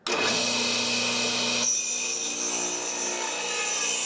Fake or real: real